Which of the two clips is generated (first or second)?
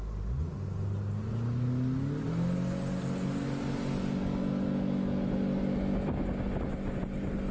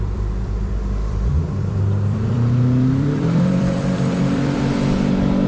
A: second